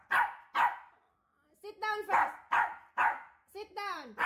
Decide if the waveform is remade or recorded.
recorded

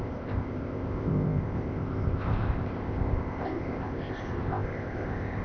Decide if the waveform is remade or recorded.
remade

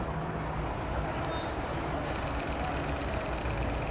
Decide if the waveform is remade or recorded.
recorded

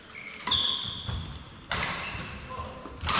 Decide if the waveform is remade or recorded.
recorded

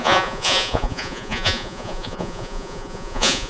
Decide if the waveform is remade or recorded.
remade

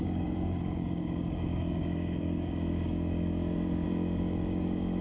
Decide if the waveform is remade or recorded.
remade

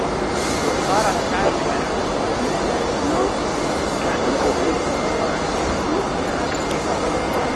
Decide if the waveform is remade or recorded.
recorded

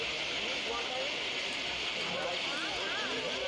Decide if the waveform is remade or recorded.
recorded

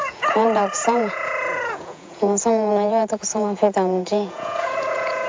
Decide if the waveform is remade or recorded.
remade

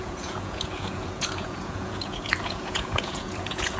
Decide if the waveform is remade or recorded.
remade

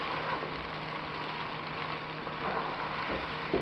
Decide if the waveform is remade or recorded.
recorded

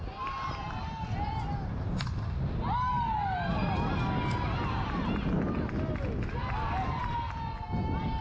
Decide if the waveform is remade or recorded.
recorded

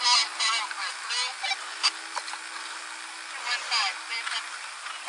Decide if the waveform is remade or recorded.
recorded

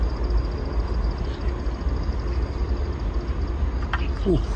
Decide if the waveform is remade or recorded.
recorded